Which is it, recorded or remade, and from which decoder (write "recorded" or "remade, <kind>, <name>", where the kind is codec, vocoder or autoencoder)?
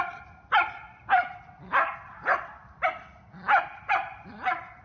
recorded